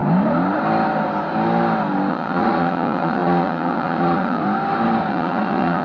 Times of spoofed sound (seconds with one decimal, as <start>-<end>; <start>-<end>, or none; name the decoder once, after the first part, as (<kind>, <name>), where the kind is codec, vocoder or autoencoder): 2.1-4.4 (vocoder, Vocos); 5.1-5.8